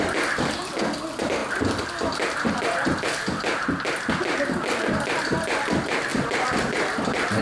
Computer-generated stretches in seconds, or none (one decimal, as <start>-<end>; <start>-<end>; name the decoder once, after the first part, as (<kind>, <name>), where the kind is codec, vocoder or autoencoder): none